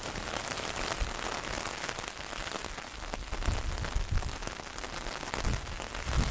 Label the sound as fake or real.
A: real